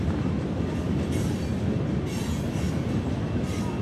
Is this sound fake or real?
real